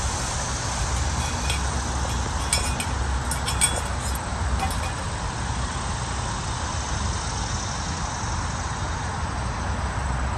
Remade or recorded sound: recorded